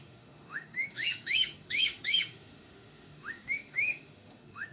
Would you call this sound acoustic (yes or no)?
no